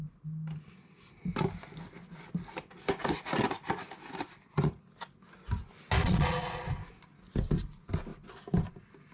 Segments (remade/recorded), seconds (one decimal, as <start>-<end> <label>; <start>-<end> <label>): 0.0-6.0 recorded; 6.0-6.7 remade; 6.7-9.1 recorded